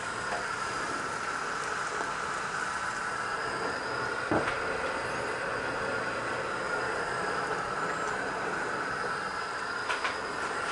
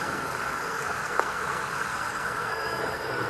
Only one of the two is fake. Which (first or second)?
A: second